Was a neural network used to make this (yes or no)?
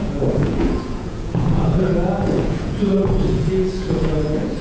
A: yes